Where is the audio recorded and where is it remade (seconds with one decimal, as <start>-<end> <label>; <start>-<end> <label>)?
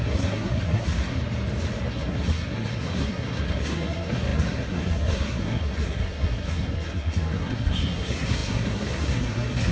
0.0-1.2 remade; 1.2-1.9 recorded; 1.9-9.7 remade